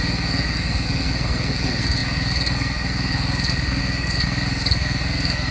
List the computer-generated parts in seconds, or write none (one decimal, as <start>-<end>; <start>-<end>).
0.0-5.5